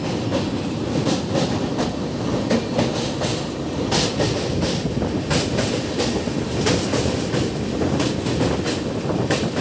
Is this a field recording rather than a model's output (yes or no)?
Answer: yes